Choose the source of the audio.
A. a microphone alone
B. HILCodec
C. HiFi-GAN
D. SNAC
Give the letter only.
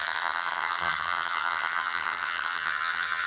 C